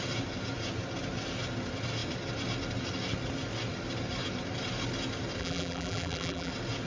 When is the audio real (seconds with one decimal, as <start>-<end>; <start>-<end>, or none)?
0.0-5.4; 6.5-6.9